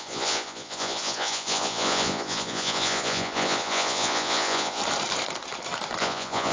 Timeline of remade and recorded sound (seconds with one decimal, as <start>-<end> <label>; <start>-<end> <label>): 0.0-4.8 remade; 4.8-6.0 recorded; 6.0-6.5 remade